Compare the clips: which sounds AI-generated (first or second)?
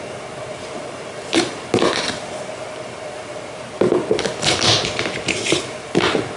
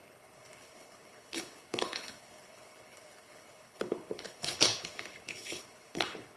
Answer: second